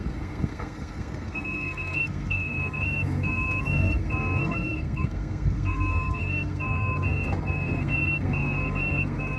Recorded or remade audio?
remade